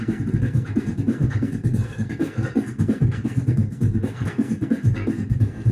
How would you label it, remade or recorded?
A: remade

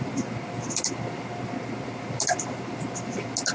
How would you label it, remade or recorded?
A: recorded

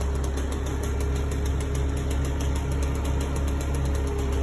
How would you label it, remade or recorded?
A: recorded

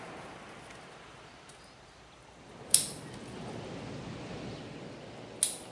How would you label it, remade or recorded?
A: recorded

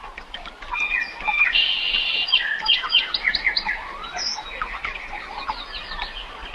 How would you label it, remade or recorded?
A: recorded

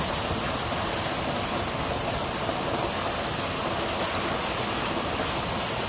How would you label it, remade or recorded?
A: recorded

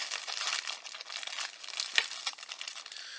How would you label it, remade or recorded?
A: recorded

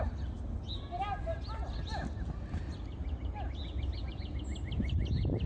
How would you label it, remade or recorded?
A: recorded